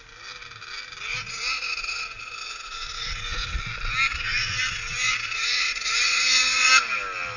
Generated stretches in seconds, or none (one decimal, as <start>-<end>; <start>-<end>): 1.1-3.6; 4.1-6.7